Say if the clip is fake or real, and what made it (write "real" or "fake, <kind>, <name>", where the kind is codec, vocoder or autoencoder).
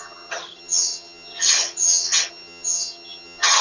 fake, vocoder, HiFi-GAN